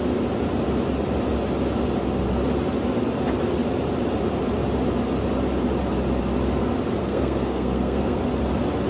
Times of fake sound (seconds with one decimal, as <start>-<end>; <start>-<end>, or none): 7.0-8.2